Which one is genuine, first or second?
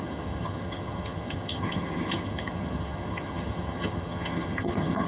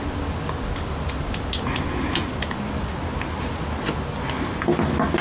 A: second